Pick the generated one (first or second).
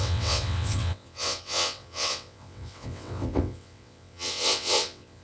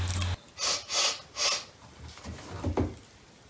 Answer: first